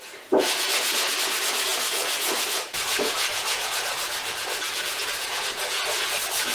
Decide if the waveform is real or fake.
fake